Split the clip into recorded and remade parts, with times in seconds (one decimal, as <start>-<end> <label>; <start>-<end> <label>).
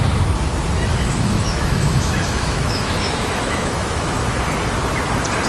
0.0-0.9 recorded; 0.9-4.2 remade; 4.2-5.5 recorded